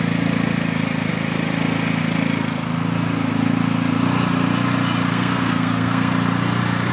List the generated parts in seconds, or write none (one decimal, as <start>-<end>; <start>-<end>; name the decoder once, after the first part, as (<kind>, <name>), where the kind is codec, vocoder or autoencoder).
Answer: 5.1-6.1 (codec, SNAC)